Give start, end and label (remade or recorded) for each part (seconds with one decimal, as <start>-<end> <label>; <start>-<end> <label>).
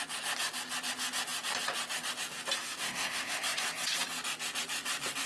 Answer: 0.0-2.6 recorded; 2.6-3.3 remade; 3.3-5.3 recorded